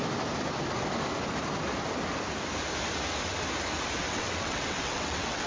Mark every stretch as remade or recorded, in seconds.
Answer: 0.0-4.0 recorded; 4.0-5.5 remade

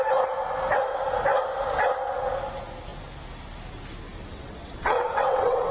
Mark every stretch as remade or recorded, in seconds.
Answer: 0.0-4.3 recorded; 4.3-5.7 remade

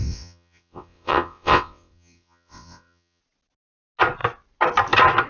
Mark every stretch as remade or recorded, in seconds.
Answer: 0.0-3.2 remade; 3.2-5.3 recorded